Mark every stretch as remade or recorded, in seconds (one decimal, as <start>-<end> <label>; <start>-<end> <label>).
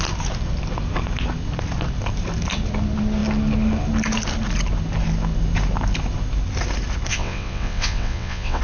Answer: 0.0-7.1 recorded; 7.1-8.6 remade